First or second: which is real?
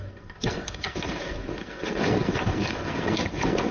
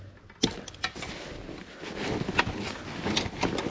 second